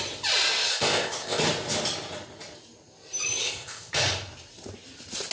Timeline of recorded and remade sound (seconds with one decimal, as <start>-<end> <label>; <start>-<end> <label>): 0.0-0.7 recorded; 0.7-1.4 remade; 1.4-3.4 recorded; 3.4-3.9 remade; 3.9-5.3 recorded

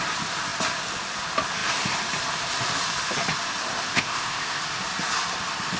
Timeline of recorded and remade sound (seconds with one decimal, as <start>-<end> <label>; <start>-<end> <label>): 0.0-3.9 recorded; 3.9-4.6 remade; 4.6-5.8 recorded

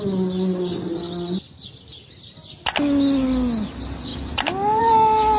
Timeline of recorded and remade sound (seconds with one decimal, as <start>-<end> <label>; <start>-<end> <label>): 0.0-5.4 recorded

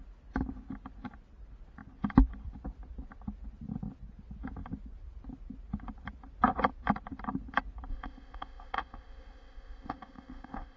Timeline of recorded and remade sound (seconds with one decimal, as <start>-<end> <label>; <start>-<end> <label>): 0.0-7.9 recorded; 7.9-10.8 remade

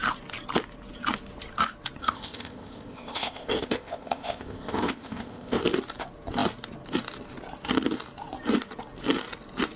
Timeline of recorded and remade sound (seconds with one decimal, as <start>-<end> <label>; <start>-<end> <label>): 0.0-2.0 recorded; 2.0-5.6 remade; 5.6-9.8 recorded